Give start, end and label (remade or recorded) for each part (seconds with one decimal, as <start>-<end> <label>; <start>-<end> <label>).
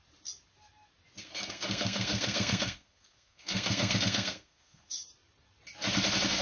0.0-1.2 recorded; 1.2-4.9 remade; 4.9-6.4 recorded